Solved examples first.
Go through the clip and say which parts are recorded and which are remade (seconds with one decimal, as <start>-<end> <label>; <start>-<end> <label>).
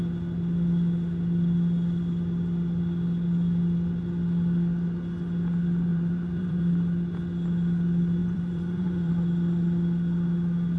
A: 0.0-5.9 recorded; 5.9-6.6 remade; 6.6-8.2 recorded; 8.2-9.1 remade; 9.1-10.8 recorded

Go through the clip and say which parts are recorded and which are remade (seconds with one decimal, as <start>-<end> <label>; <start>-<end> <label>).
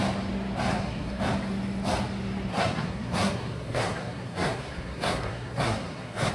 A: 0.0-0.7 recorded; 0.7-1.2 remade; 1.2-2.5 recorded; 2.5-6.3 remade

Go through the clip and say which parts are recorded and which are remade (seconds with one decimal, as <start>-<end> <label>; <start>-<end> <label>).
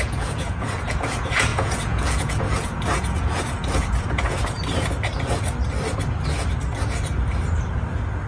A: 0.0-4.4 remade; 4.4-8.3 recorded